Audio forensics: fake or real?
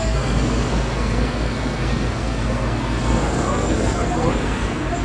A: fake